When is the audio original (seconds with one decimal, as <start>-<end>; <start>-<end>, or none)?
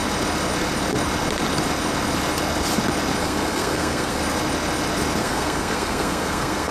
0.0-3.2; 4.2-5.2